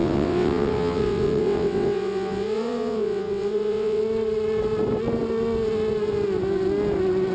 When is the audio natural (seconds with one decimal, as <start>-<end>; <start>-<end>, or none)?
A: 4.0-7.3